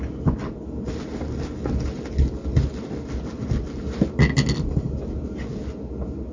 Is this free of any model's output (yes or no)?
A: yes